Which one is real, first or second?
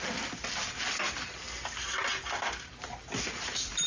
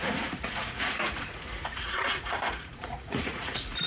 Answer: first